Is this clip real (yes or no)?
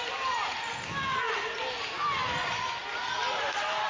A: yes